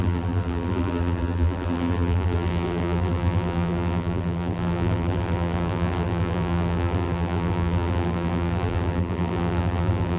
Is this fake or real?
fake